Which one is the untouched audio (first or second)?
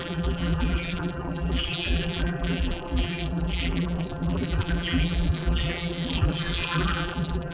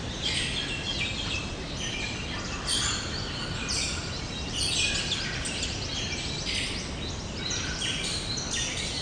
second